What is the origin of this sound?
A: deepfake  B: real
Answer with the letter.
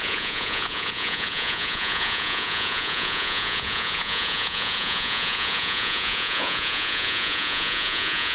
A